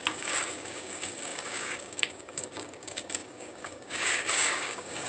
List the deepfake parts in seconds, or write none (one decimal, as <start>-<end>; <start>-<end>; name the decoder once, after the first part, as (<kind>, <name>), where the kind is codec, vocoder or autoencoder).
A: 0.0-5.1 (codec, DAC)